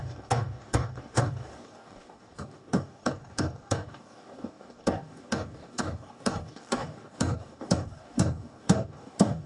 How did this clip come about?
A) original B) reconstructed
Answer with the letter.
B